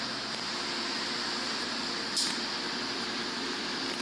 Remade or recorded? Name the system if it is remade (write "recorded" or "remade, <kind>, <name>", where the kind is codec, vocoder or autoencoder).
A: recorded